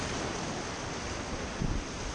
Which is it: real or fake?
fake